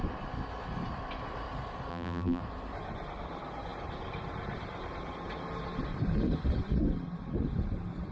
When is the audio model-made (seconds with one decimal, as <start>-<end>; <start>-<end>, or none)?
1.9-2.4